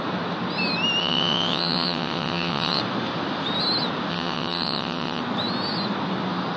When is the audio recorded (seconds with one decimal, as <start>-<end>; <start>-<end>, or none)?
0.0-1.0; 2.8-4.1; 5.2-6.6